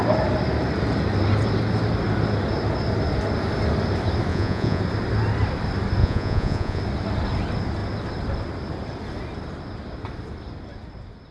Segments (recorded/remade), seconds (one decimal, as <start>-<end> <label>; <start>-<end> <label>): 0.0-4.3 recorded; 4.3-4.8 remade; 4.8-6.0 recorded; 6.0-6.8 remade; 6.8-11.3 recorded